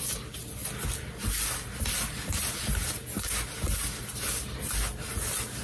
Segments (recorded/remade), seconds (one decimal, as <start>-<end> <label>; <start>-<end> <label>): 0.0-5.6 recorded